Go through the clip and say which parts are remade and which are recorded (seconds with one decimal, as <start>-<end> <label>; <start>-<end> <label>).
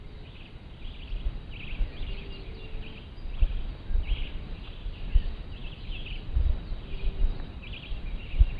0.0-8.6 recorded